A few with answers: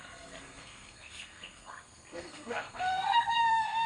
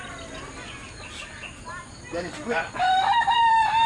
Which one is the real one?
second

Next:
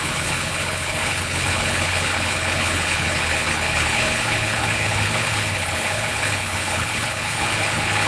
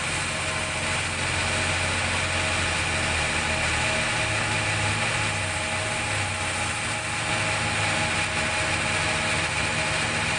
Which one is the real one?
second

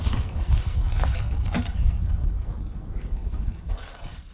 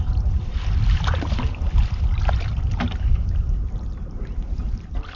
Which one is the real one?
second